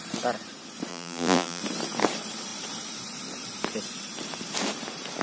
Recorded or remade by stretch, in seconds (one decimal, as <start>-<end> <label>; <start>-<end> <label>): 0.0-0.9 recorded; 0.9-1.6 remade; 1.6-5.2 recorded